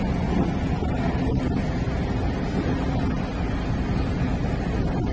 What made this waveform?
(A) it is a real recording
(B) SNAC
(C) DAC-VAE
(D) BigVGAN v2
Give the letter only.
A